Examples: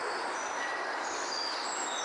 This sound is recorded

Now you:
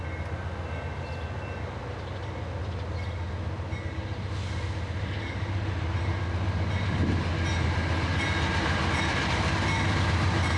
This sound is recorded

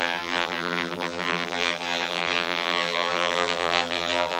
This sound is remade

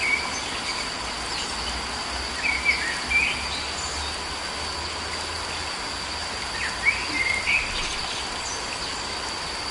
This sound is recorded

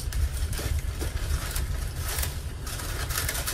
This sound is recorded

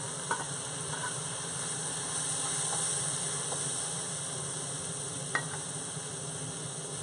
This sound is recorded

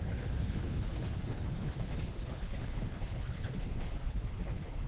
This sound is remade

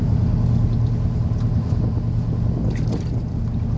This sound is recorded